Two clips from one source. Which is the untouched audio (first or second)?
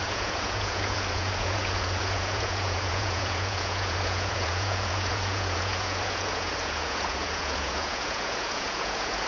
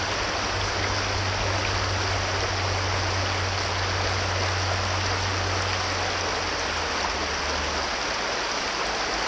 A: second